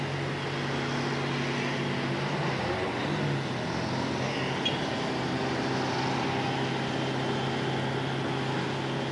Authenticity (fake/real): real